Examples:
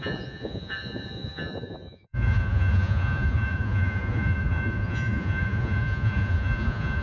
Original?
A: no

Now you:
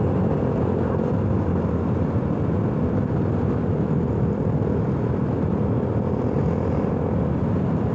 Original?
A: yes